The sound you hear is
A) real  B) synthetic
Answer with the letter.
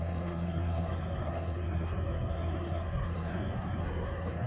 B